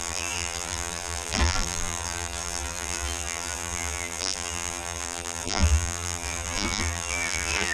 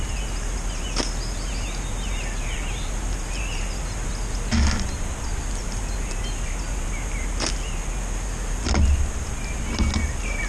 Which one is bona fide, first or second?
second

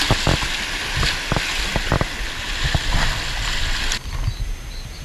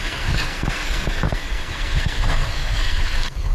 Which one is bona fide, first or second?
first